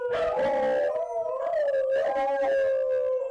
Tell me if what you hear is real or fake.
real